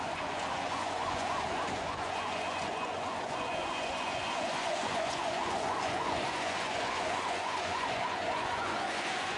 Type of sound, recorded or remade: remade